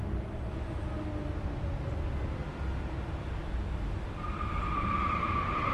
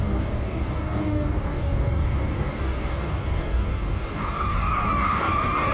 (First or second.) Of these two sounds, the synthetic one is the second